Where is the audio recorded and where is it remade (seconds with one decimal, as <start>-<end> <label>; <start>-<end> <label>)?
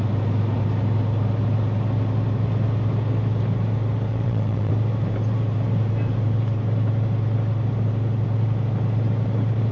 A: 0.0-4.1 recorded; 4.1-4.7 remade; 4.7-9.7 recorded